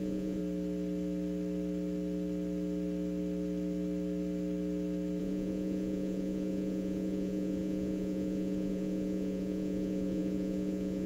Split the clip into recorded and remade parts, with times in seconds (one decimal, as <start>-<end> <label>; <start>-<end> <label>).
0.0-0.4 remade; 0.4-5.2 recorded; 5.2-11.1 remade